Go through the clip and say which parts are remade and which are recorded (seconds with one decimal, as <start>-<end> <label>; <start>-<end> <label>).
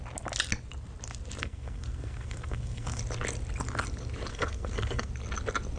0.0-1.4 recorded; 1.4-3.0 remade; 3.0-4.3 recorded; 4.3-5.1 remade; 5.1-5.8 recorded